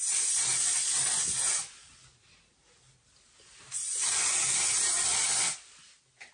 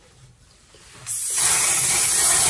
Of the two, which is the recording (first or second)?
first